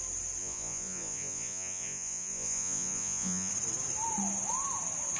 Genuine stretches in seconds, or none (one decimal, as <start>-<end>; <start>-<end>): 0.0-0.4; 3.5-5.2